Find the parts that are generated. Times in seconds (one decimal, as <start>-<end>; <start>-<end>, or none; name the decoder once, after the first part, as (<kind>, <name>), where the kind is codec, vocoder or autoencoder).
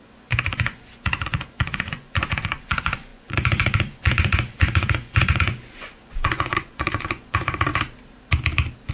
0.0-7.7 (vocoder, Vocos)